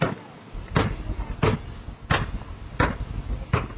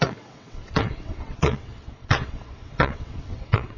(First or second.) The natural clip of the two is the first